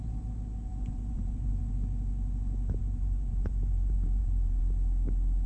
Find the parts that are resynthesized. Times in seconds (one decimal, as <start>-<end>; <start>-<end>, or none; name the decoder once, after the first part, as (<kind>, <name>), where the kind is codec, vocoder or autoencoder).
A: 0.7-1.7 (vocoder, BigVGAN v2); 2.8-4.6